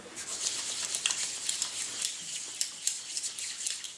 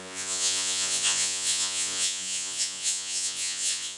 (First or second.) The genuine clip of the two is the first